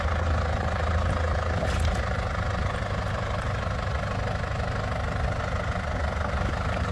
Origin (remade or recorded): recorded